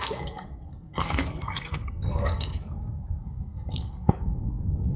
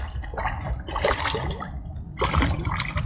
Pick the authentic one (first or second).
second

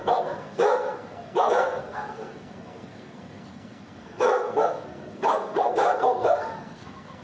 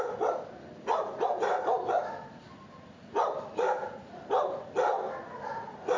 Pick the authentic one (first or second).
second